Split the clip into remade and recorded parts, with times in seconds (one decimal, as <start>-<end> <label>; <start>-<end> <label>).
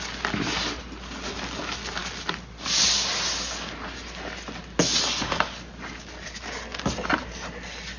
0.0-8.0 recorded